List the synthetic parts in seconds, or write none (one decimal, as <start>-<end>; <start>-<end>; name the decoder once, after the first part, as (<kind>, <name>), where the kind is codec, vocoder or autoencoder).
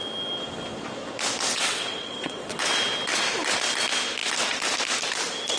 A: 1.5-2.6 (vocoder, WaveNeXt)